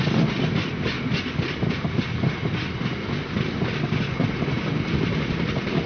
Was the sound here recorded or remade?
recorded